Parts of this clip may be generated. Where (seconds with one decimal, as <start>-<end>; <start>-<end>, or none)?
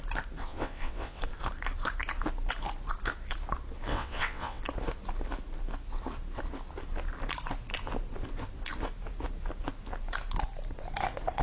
0.4-1.2; 3.9-4.6